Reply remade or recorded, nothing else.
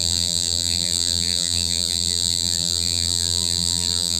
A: remade